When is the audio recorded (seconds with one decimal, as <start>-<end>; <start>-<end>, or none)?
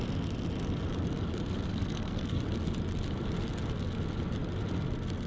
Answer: 0.0-1.7; 2.4-5.3